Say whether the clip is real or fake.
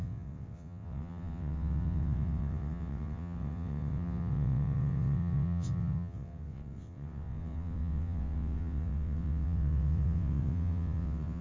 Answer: fake